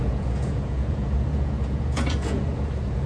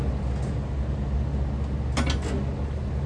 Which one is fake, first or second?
first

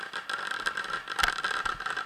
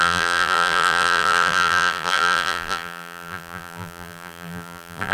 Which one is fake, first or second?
second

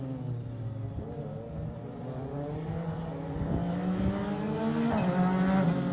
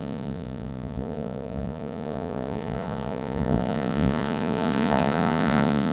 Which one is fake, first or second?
second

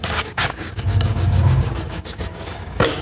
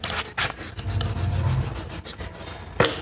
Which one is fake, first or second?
first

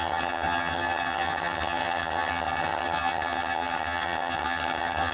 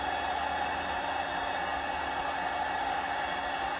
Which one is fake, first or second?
first